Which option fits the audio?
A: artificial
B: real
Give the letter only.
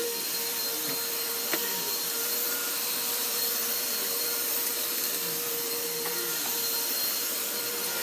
A